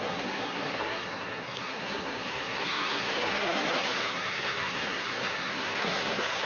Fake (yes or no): yes